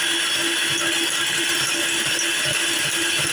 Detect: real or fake real